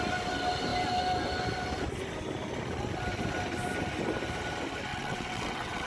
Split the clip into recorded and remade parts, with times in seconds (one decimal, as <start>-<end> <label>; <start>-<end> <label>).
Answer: 0.0-4.9 recorded; 4.9-5.9 remade